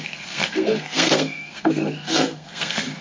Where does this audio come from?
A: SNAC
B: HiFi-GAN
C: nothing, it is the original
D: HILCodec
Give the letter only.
A